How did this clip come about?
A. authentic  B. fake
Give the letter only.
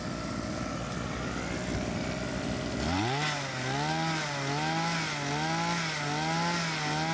A